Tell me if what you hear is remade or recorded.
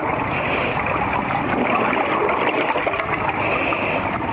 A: recorded